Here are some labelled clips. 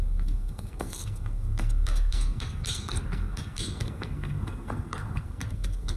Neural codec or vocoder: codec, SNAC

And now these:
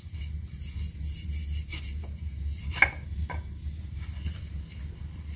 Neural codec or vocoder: none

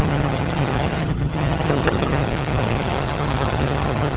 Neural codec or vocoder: vocoder, HiFi-GAN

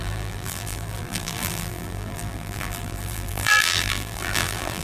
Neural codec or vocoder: vocoder, BigVGAN v2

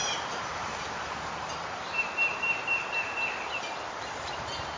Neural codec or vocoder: vocoder, BigVGAN v2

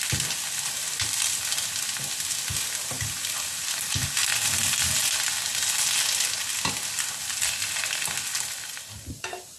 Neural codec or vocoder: none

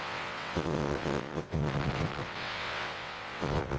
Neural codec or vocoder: vocoder, WaveNeXt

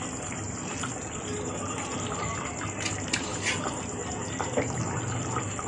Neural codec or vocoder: none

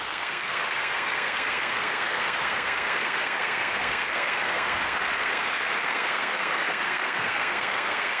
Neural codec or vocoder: codec, SNAC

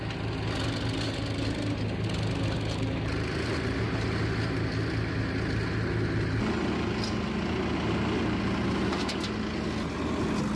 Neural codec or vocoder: none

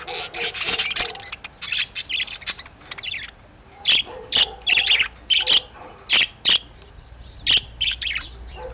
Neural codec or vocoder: none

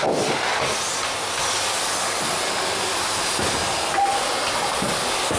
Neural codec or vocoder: none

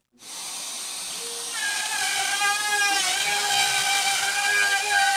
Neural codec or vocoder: none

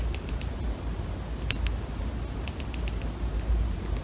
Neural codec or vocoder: none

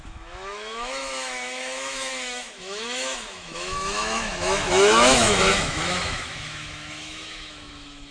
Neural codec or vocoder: autoencoder, DAC-VAE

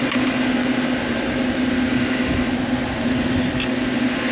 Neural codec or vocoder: none